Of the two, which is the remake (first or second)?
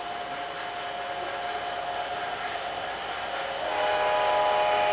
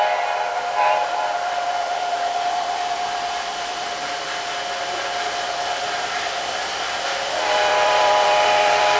second